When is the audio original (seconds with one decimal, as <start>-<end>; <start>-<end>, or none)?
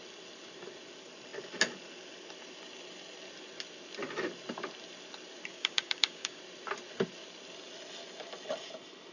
0.0-5.5; 6.4-9.1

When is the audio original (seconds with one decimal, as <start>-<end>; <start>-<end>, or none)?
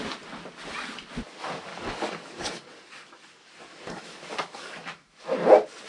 0.0-1.7; 5.2-5.9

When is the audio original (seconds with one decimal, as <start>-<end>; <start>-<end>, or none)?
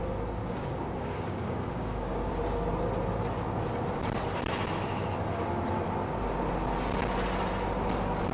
0.0-0.4; 2.3-8.3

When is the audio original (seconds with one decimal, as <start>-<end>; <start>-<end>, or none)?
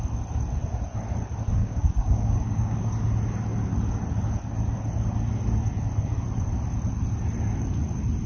0.0-1.6; 2.9-8.3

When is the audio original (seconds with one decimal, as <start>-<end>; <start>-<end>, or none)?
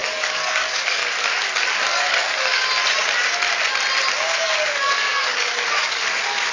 1.0-1.7; 2.6-4.1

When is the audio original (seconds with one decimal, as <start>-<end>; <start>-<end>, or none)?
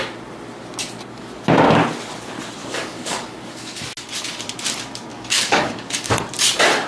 0.0-2.6; 3.8-5.1; 6.1-6.9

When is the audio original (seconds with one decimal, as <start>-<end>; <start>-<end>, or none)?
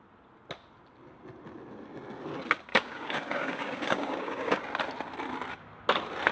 0.0-2.7; 4.6-6.3